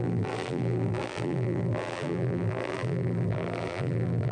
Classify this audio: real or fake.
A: fake